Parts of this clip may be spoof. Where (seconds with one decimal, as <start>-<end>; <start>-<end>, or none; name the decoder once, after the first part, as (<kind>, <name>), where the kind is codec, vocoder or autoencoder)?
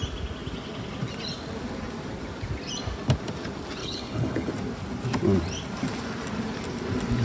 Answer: 3.8-4.5 (codec, HILCodec)